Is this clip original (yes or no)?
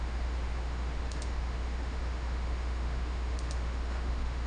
no